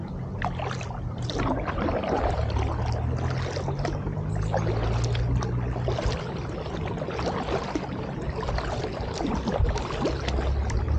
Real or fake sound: real